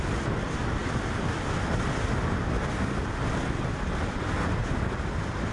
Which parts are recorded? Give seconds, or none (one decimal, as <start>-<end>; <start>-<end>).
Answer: 0.0-4.6